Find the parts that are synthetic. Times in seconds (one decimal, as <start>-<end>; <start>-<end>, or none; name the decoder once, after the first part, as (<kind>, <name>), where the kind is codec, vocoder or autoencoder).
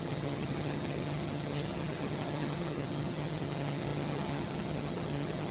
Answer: 0.0-5.5 (vocoder, HiFi-GAN)